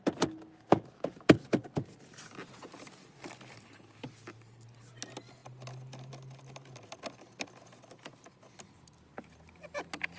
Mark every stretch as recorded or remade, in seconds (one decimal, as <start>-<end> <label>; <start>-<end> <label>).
0.0-10.2 recorded